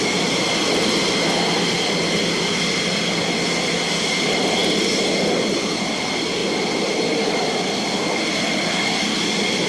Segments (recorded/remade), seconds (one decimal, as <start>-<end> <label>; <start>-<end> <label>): 0.0-6.4 recorded; 6.4-7.6 remade; 7.6-9.7 recorded

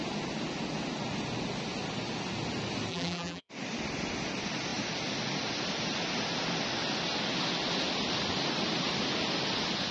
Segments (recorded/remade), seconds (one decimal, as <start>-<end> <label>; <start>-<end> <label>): 0.0-2.9 recorded; 2.9-3.5 remade; 3.5-9.9 recorded

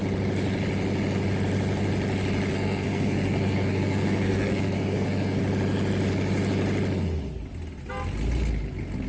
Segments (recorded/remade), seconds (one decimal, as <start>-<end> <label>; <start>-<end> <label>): 0.0-2.5 recorded; 2.5-5.4 remade; 5.4-9.1 recorded

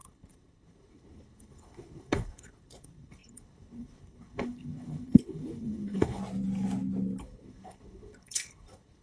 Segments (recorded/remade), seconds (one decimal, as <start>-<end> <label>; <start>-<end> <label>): 0.0-6.2 remade; 6.2-7.2 recorded; 7.2-9.0 remade

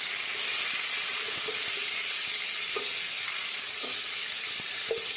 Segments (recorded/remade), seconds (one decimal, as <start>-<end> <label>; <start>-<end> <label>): 0.0-2.9 recorded; 2.9-3.9 remade; 3.9-5.2 recorded

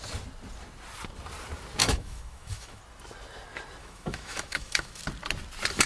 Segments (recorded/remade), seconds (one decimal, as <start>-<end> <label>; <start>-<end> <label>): 0.0-1.8 recorded; 1.8-2.8 remade; 2.8-3.8 recorded; 3.8-5.0 remade; 5.0-5.9 recorded